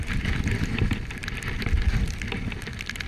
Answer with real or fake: real